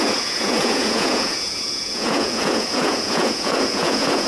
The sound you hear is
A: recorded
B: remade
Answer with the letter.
B